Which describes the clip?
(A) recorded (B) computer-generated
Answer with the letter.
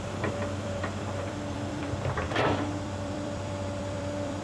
B